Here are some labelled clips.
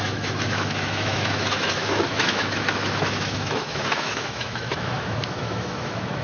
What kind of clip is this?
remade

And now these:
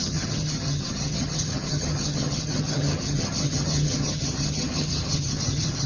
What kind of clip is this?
remade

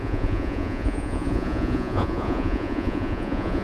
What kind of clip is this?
remade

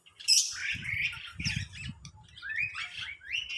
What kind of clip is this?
recorded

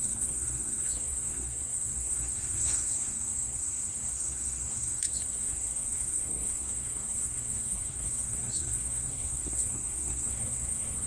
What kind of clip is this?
remade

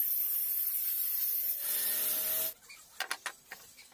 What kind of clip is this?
recorded